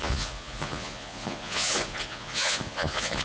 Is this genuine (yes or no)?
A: no